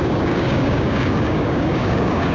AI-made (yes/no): yes